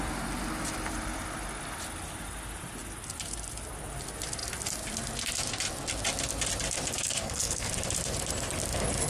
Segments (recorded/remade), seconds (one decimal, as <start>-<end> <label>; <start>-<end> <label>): 0.0-7.0 recorded; 7.0-7.7 remade; 7.7-9.1 recorded